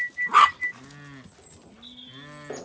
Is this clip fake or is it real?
real